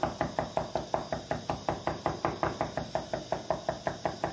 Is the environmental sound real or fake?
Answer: real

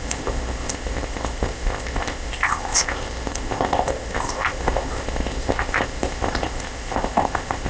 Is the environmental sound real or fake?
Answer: fake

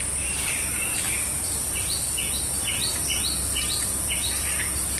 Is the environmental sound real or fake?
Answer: real